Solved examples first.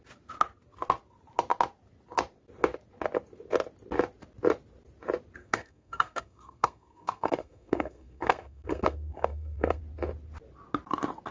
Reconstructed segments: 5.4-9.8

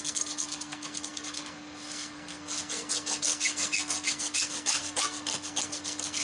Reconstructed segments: 0.0-6.2

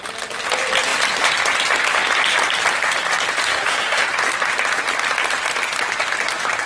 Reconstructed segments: 3.5-4.0

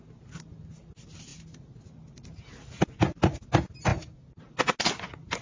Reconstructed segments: none

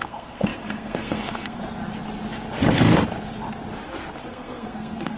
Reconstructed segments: 0.0-1.6; 4.2-5.2

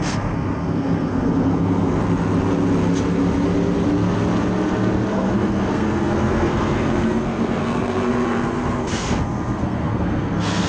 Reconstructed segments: 0.0-2.0; 5.1-10.7

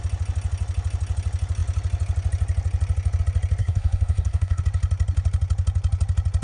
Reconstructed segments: 3.6-4.6

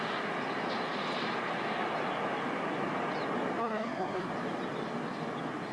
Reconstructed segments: 3.6-4.3